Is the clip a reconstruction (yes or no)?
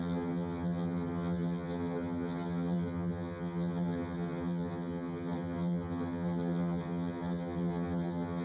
yes